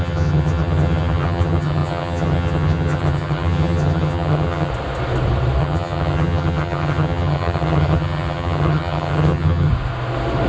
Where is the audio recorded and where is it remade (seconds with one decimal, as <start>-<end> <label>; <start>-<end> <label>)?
0.0-4.7 remade; 4.7-5.6 recorded; 5.6-9.7 remade; 9.7-10.5 recorded